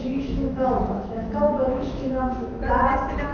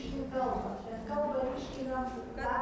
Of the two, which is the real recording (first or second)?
second